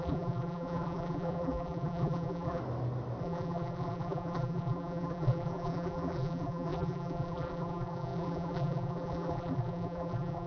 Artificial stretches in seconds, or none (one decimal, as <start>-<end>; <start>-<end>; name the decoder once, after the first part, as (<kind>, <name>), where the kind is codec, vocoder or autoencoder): 0.0-2.6 (vocoder, BigVGAN v2); 3.2-10.5